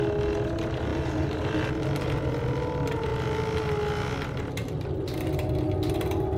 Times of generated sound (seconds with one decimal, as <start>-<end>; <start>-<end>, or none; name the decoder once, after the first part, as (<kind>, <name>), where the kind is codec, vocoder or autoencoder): 0.9-1.5 (vocoder, BigVGAN v2); 4.6-5.6